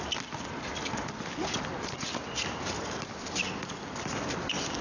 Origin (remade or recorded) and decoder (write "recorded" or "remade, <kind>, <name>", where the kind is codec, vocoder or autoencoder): recorded